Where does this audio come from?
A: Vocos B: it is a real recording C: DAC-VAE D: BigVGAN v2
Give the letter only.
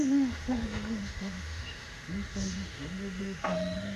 C